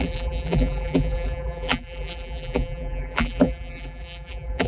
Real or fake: fake